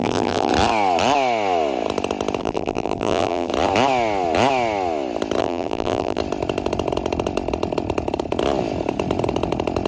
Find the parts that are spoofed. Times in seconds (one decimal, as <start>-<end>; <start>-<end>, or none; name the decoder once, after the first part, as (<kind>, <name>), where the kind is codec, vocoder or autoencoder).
0.0-0.5 (vocoder, BigVGAN v2); 2.4-3.5; 5.4-6.2